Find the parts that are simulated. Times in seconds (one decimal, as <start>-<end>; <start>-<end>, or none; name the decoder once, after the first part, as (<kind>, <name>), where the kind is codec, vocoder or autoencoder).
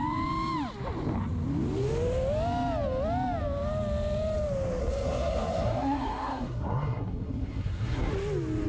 4.8-8.1 (codec, SNAC)